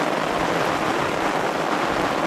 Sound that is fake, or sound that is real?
fake